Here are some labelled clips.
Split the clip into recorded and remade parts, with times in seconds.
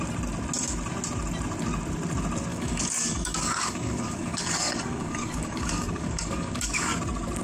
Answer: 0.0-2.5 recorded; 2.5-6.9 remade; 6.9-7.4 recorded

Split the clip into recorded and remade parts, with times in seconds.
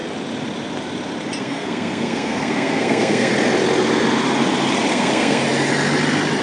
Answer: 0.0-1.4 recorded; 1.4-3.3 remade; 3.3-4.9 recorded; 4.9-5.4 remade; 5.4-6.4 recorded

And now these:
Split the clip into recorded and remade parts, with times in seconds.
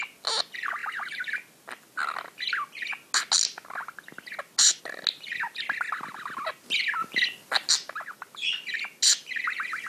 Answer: 0.0-9.9 recorded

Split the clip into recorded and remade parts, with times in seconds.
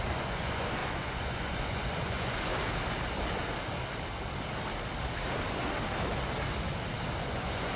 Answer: 0.0-2.5 remade; 2.5-7.2 recorded; 7.2-7.8 remade